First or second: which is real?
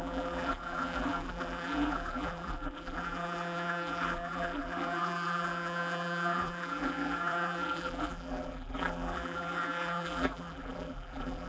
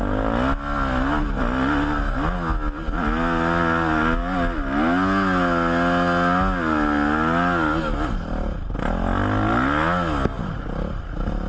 second